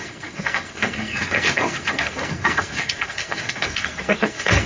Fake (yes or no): yes